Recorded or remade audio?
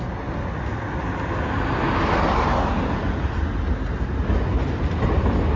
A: recorded